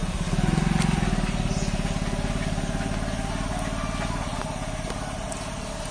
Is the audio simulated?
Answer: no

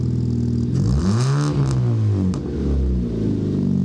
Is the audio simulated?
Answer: no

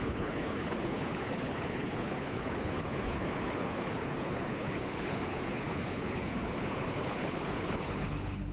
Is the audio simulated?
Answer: yes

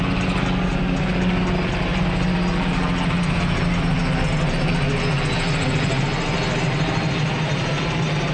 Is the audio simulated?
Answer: no